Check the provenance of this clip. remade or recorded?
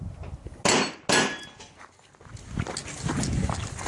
recorded